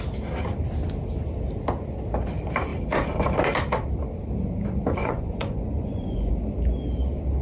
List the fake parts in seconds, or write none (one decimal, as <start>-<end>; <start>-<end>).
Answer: 5.0-6.3